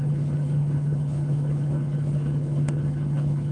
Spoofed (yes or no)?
yes